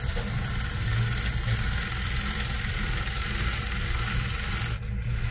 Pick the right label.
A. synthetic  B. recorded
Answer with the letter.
B